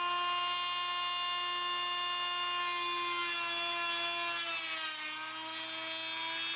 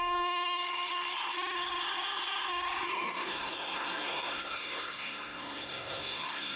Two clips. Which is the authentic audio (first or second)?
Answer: first